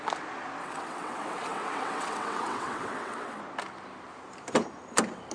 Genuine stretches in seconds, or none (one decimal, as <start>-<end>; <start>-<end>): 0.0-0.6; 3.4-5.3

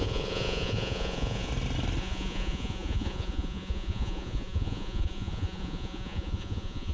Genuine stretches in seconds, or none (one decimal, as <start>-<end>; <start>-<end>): 1.5-2.0

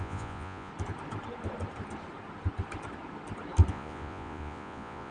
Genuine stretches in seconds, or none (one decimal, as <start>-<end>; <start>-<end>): 0.7-3.7

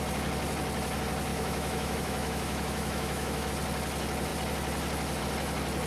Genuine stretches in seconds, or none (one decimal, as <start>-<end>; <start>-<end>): 0.0-1.3; 3.5-5.9